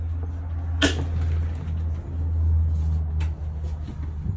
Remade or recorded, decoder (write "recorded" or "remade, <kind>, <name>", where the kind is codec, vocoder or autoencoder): recorded